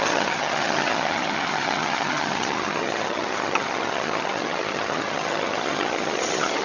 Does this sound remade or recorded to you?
remade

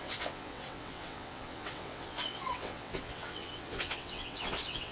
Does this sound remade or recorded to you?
remade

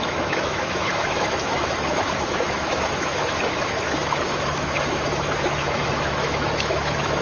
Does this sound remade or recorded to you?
remade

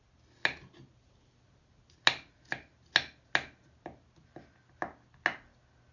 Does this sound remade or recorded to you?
recorded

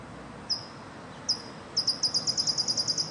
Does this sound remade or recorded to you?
recorded